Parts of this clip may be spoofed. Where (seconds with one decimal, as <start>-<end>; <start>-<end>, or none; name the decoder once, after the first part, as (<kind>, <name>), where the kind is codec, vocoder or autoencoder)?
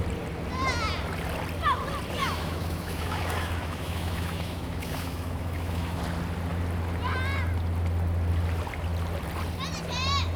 2.2-6.0 (autoencoder, DAC-VAE)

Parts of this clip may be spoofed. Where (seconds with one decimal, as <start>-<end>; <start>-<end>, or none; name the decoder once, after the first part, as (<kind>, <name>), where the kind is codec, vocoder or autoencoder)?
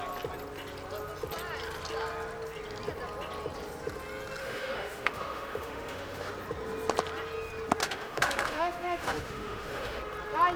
4.4-6.3 (autoencoder, DAC-VAE); 7.8-10.0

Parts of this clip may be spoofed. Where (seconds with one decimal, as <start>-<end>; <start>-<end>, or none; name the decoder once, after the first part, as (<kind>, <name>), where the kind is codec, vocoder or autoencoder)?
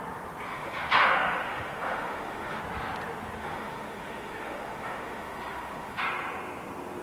0.5-2.6 (autoencoder, DAC-VAE); 3.4-6.0